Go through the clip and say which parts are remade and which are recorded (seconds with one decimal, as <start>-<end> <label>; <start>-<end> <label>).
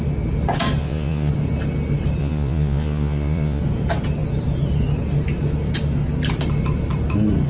0.0-0.8 recorded; 0.8-1.3 remade; 1.3-2.2 recorded; 2.2-3.6 remade; 3.6-7.5 recorded